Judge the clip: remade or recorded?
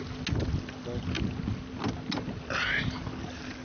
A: recorded